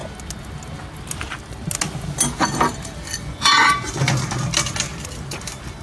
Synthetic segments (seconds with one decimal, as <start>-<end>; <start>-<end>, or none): 3.2-3.9